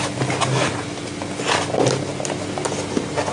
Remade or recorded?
recorded